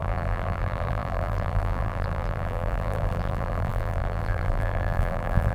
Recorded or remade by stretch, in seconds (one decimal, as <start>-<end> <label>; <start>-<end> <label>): 0.0-5.5 remade